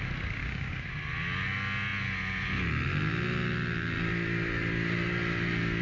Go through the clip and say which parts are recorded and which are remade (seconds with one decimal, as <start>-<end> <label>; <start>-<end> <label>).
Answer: 0.0-0.4 recorded; 0.4-0.9 remade; 0.9-5.8 recorded